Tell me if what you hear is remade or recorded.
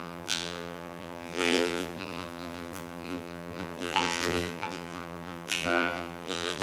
remade